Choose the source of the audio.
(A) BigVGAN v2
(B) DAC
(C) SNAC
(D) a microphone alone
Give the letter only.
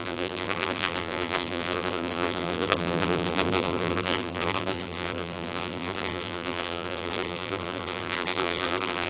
A